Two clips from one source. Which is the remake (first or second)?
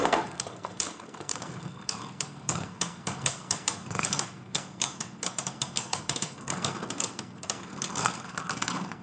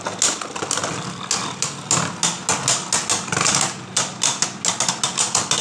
first